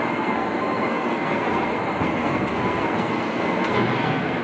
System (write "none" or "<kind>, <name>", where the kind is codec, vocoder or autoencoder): codec, SNAC